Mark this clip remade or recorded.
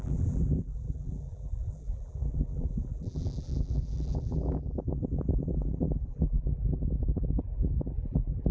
remade